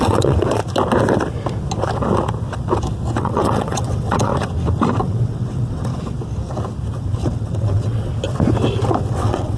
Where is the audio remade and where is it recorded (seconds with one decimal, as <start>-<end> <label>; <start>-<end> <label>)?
0.0-0.6 remade; 0.6-3.2 recorded; 3.2-4.3 remade; 4.3-5.0 recorded; 5.0-5.9 remade; 5.9-7.0 recorded; 7.0-8.1 remade; 8.1-9.1 recorded; 9.1-9.6 remade